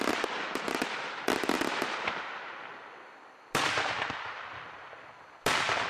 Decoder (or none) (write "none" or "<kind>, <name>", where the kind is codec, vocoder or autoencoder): vocoder, BigVGAN v2